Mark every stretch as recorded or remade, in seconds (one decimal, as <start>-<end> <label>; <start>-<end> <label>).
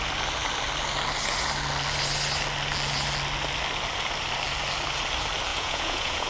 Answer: 0.0-5.5 recorded; 5.5-6.3 remade